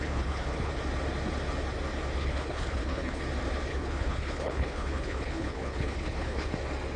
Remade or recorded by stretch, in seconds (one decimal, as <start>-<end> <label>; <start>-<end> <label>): 0.0-0.7 remade; 0.7-2.2 recorded; 2.2-3.2 remade; 3.2-3.7 recorded; 3.7-6.5 remade; 6.5-7.0 recorded